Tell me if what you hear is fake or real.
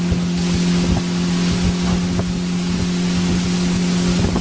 real